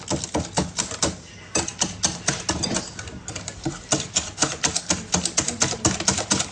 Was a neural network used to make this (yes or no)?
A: no